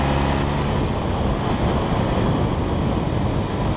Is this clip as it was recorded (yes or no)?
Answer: yes